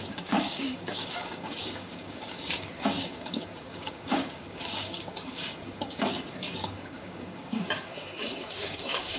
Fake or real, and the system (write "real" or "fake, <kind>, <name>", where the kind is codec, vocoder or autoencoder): fake, codec, DAC